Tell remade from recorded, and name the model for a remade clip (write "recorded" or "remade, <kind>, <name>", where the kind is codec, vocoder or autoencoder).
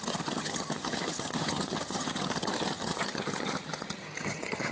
remade, vocoder, HiFi-GAN